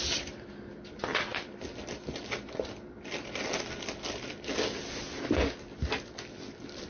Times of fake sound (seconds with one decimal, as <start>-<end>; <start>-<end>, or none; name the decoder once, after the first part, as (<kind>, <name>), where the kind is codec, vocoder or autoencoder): none